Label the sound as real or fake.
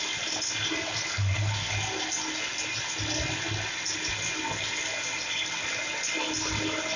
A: real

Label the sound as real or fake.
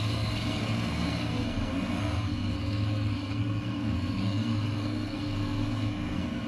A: fake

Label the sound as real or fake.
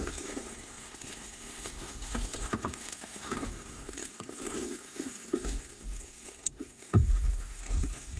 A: fake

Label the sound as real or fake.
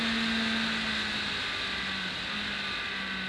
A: real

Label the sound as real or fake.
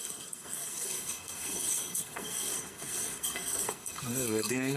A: fake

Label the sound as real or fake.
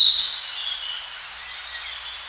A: real